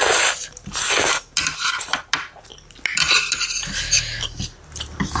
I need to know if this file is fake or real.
real